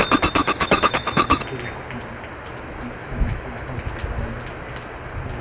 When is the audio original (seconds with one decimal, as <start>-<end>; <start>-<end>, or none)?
0.0-0.4; 1.4-3.0; 3.7-5.4